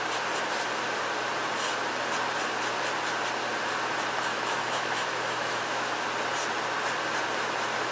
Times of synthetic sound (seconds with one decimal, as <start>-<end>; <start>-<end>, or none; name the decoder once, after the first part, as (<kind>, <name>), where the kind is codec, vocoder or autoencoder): 4.3-5.9 (autoencoder, DAC-VAE)